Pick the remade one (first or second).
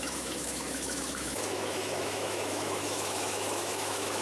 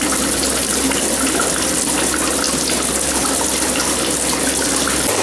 first